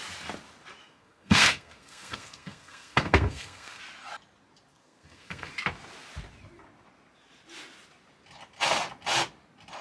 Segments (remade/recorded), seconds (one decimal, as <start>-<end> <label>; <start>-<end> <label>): 0.0-0.8 recorded; 0.8-3.8 remade; 3.8-4.7 recorded; 4.7-5.5 remade; 5.5-9.8 recorded